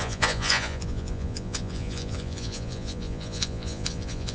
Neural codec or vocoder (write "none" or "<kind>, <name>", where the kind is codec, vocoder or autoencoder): vocoder, Vocos